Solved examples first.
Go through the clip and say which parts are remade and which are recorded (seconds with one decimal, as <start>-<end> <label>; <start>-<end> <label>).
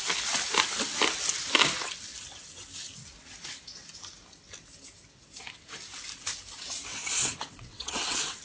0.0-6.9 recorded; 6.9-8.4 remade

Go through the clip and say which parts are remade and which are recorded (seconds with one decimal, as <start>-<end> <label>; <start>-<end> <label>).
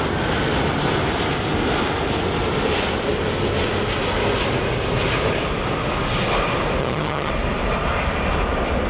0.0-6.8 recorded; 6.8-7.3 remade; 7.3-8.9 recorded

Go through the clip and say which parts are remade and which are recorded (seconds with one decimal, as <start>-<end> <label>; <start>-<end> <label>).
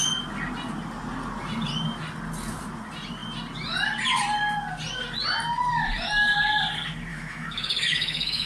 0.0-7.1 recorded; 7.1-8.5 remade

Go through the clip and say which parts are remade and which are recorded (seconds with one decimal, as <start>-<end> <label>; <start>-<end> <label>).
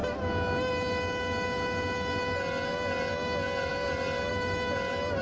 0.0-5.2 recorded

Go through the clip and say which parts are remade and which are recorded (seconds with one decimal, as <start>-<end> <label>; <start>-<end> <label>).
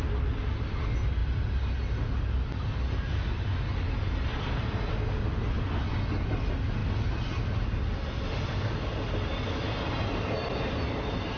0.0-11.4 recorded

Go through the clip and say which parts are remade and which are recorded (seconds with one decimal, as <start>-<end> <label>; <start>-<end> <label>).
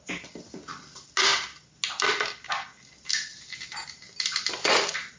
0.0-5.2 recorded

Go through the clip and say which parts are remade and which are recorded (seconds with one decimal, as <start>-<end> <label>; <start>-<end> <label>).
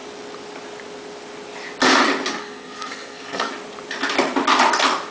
0.0-2.4 recorded; 2.4-3.5 remade; 3.5-5.1 recorded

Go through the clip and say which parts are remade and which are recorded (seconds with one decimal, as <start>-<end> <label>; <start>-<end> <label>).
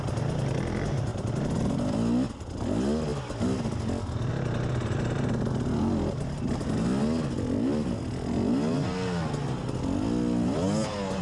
0.0-11.2 recorded